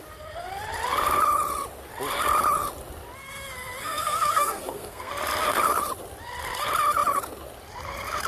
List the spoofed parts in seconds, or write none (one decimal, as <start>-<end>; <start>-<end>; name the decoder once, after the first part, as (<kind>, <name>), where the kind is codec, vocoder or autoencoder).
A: 3.8-5.1 (codec, SNAC)